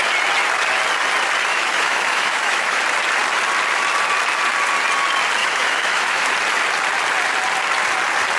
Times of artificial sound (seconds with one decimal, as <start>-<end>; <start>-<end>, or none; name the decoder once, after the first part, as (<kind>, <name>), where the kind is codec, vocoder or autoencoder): 1.5-2.8 (autoencoder, DAC-VAE); 5.4-6.3